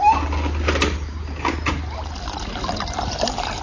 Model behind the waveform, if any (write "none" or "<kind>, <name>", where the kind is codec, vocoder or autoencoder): none